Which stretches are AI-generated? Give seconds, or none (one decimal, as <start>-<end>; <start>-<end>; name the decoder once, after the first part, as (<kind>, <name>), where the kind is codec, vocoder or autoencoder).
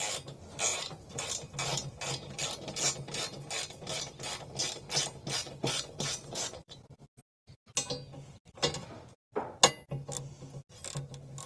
0.7-1.2 (vocoder, Vocos); 5.4-6.8